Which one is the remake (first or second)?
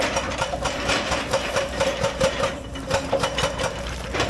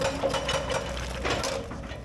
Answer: first